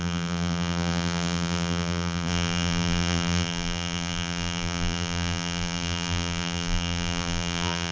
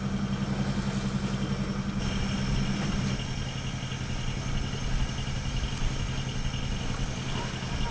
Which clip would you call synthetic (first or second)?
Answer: first